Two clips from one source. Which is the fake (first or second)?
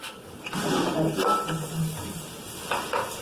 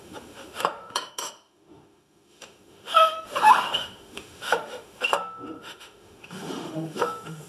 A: second